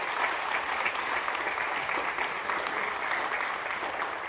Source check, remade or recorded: recorded